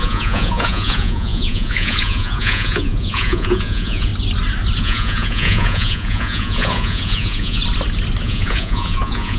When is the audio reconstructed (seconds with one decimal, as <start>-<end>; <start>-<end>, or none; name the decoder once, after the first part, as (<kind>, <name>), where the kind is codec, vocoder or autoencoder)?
0.0-4.1 (vocoder, Vocos); 4.8-7.6; 8.2-9.4